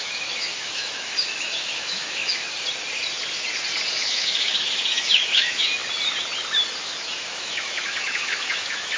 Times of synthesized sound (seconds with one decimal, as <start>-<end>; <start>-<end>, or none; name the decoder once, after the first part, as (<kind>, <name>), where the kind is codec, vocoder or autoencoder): 0.0-2.5 (autoencoder, DAC-VAE); 3.9-5.8; 6.8-9.0